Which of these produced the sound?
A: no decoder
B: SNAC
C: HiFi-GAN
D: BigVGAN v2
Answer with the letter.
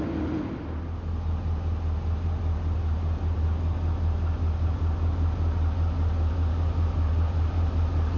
A